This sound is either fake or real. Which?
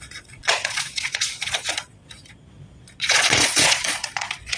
fake